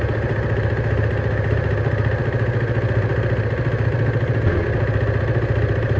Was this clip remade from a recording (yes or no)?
no